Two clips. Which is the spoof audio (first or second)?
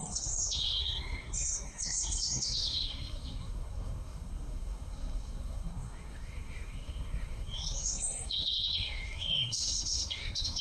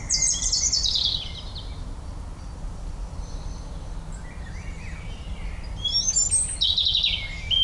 first